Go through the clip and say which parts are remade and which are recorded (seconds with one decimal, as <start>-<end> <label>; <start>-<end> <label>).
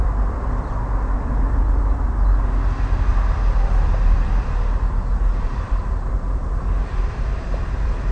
0.0-1.6 remade; 1.6-3.1 recorded; 3.1-6.4 remade; 6.4-7.0 recorded; 7.0-8.1 remade